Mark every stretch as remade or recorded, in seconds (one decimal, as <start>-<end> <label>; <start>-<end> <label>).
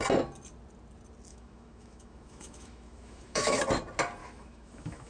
0.0-1.3 recorded; 1.3-3.6 remade; 3.6-4.2 recorded; 4.2-5.1 remade